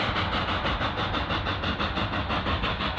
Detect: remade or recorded recorded